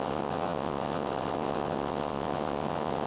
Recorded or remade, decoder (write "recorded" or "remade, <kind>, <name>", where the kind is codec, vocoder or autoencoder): remade, vocoder, WaveNeXt